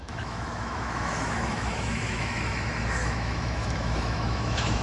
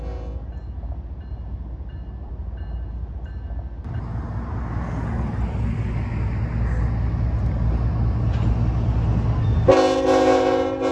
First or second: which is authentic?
second